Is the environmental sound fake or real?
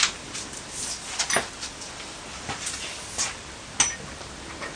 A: real